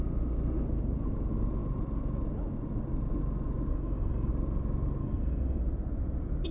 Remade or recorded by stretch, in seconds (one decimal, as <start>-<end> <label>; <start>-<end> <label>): 0.0-3.7 recorded; 3.7-4.3 remade; 4.3-5.0 recorded; 5.0-5.6 remade; 5.6-6.5 recorded